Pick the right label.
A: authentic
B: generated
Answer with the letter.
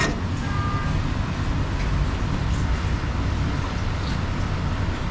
A